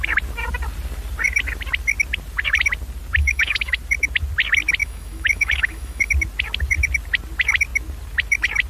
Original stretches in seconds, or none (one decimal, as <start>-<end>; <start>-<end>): 0.0-3.2; 3.8-4.8; 6.1-8.7